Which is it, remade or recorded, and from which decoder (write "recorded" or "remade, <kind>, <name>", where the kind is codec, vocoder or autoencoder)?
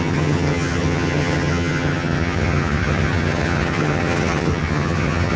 remade, vocoder, HiFi-GAN